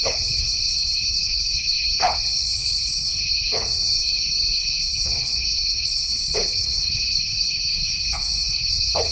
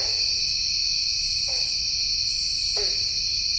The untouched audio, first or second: second